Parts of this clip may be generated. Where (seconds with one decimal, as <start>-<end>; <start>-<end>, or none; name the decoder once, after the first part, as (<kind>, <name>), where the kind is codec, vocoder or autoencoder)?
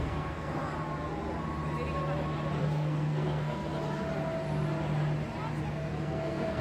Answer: 0.0-0.6 (codec, SNAC); 2.6-3.7; 5.7-6.6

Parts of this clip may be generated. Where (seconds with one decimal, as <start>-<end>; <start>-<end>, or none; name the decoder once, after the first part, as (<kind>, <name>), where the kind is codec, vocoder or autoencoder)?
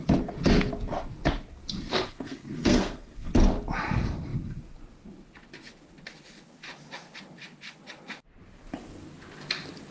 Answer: 1.9-3.3 (codec, SNAC)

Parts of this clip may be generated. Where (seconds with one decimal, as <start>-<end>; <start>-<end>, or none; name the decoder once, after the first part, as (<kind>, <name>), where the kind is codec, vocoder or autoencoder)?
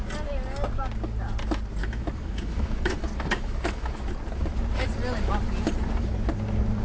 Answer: 1.8-4.1 (autoencoder, DAC-VAE)